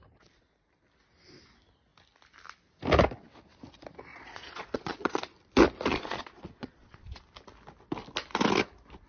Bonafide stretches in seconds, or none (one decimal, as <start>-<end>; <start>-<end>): 0.0-4.1; 5.2-5.9; 7.2-9.1